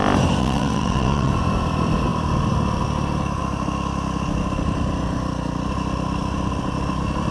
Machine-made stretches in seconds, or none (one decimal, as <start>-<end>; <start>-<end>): 0.4-1.3